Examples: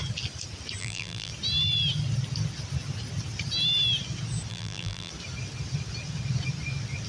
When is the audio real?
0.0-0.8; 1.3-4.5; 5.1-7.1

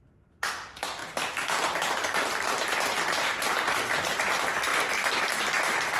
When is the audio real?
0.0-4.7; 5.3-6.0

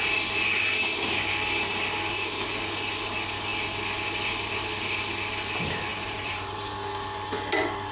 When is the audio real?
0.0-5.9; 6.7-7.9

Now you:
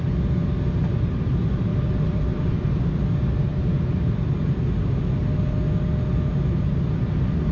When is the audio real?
0.0-1.7; 2.7-7.5